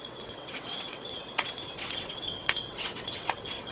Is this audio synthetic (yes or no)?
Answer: yes